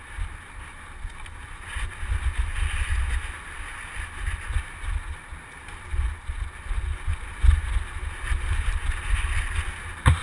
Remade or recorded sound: recorded